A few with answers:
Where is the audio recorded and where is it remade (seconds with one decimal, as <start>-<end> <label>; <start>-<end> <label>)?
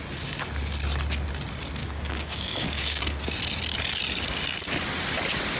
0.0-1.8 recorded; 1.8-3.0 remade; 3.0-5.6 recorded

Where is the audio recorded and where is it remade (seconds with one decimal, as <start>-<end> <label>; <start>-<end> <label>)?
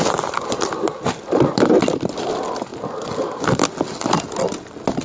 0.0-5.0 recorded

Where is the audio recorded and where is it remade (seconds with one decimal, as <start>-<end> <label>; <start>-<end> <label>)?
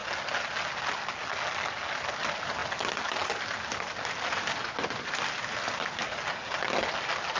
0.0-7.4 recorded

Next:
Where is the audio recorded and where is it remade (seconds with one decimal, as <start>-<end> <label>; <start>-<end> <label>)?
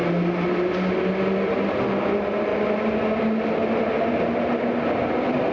0.0-5.5 recorded